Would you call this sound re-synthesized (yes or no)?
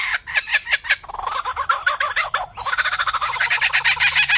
no